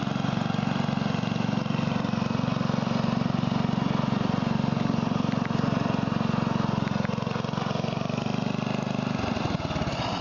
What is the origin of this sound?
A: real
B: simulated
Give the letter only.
A